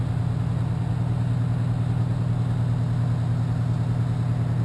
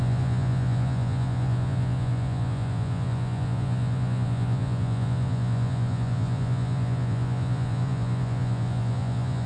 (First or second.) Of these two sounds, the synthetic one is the second